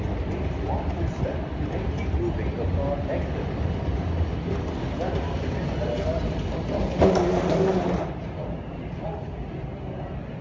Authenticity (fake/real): real